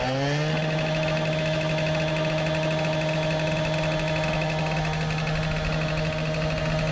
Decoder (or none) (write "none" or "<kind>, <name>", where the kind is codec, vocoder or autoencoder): none